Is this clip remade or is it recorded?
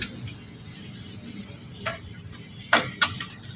recorded